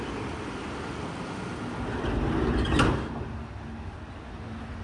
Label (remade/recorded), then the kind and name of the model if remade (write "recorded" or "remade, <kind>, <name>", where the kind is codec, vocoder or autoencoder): recorded